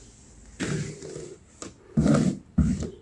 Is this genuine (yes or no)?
yes